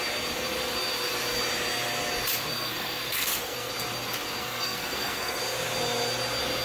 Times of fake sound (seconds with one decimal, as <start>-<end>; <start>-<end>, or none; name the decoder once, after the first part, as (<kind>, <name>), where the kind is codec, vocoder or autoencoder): 2.5-3.7 (codec, SNAC); 4.4-5.4